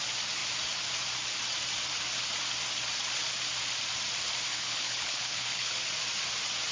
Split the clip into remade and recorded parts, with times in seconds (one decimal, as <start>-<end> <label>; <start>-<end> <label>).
0.0-4.5 recorded; 4.5-5.7 remade; 5.7-6.7 recorded